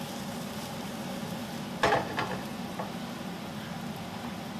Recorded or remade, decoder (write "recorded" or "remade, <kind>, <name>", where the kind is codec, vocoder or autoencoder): recorded